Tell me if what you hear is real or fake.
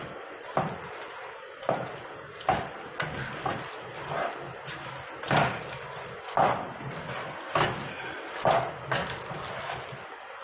real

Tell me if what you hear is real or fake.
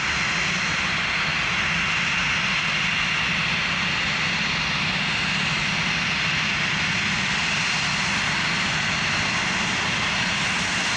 real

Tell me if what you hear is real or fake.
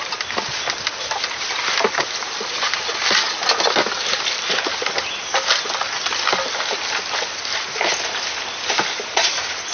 real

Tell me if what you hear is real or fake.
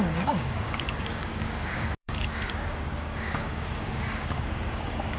fake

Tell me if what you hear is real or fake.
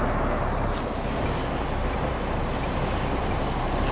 real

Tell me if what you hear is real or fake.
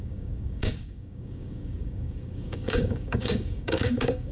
fake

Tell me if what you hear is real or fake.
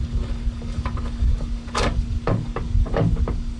fake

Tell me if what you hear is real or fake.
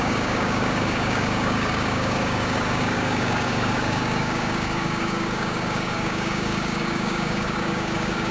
fake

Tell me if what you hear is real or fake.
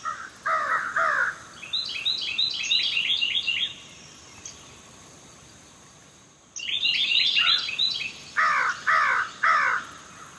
real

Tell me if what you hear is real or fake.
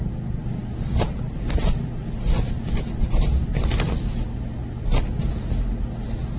real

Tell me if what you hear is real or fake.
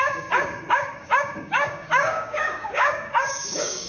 fake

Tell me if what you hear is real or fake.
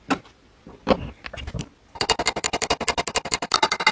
real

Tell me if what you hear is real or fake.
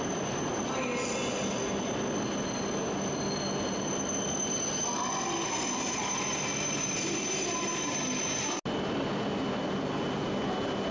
real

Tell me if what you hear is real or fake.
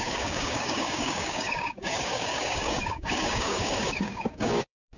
fake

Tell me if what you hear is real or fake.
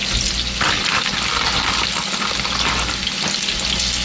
real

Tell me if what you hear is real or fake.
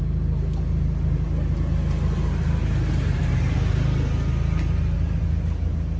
real